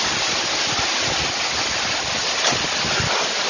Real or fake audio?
real